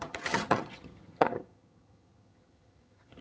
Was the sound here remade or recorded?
remade